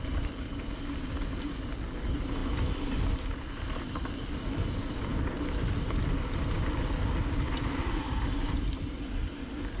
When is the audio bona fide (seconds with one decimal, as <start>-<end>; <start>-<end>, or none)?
0.0-9.8